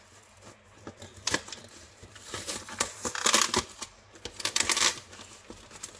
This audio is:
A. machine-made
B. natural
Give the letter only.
A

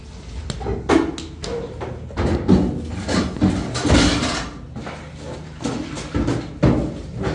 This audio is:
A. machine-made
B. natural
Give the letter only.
B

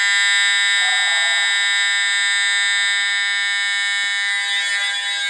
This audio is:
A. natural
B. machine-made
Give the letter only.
A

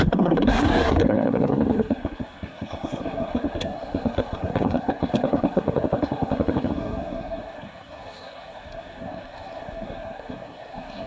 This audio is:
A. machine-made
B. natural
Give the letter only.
A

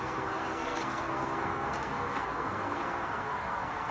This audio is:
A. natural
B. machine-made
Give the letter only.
B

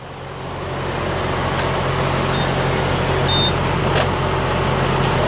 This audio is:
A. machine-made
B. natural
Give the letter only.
B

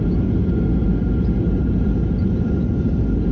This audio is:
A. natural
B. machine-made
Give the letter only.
A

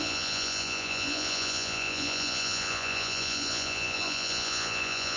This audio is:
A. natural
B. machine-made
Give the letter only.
B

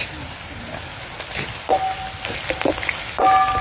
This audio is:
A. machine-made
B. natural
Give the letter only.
B